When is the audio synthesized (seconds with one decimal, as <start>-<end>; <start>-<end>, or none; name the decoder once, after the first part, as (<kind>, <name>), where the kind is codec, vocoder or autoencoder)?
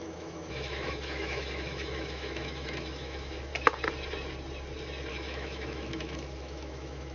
0.0-3.5 (autoencoder, DAC-VAE); 5.1-7.1